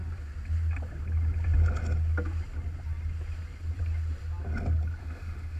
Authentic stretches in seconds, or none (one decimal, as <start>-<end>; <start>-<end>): 0.0-5.0